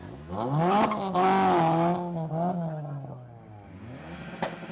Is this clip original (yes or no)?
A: yes